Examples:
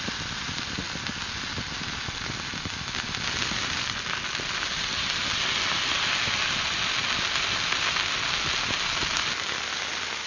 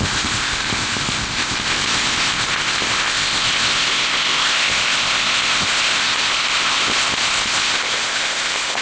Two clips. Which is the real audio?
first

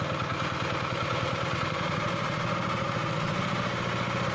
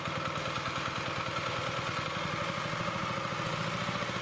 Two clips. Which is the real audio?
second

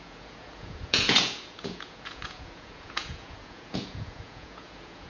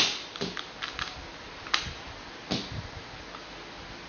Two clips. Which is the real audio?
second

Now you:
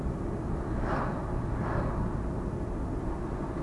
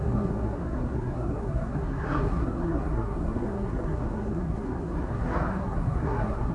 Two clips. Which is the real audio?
first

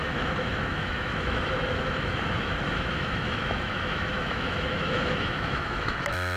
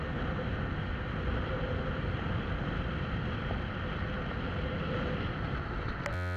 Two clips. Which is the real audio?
second